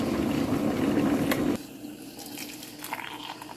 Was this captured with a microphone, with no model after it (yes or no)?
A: yes